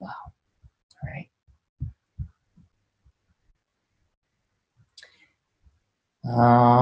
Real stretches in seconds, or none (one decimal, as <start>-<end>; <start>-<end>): 0.0-6.8

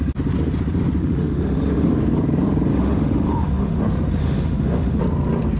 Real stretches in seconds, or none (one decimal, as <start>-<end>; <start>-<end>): 0.0-1.0; 1.9-2.7; 3.8-4.2; 5.0-5.6